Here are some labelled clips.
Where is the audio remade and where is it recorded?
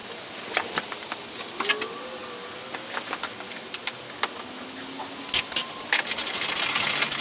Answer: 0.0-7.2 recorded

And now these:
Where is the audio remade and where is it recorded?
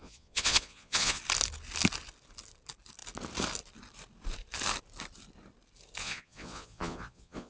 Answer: 0.0-1.2 remade; 1.2-6.0 recorded; 6.0-7.5 remade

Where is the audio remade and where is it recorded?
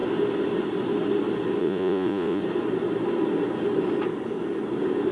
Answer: 0.0-1.6 recorded; 1.6-2.4 remade; 2.4-5.1 recorded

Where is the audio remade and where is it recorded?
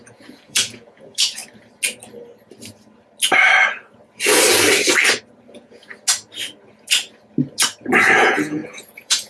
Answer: 0.0-1.4 remade; 1.4-5.5 recorded; 5.5-5.9 remade; 5.9-8.2 recorded; 8.2-9.3 remade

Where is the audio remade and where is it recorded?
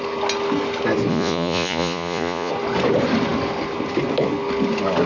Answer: 0.0-1.1 recorded; 1.1-2.5 remade; 2.5-5.1 recorded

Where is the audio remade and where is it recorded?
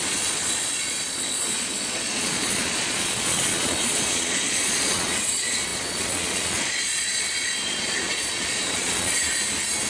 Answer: 0.0-9.2 remade; 9.2-9.9 recorded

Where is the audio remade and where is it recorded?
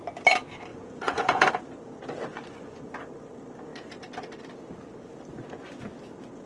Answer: 0.0-0.7 recorded; 0.7-1.5 remade; 1.5-2.3 recorded; 2.3-2.8 remade; 2.8-6.5 recorded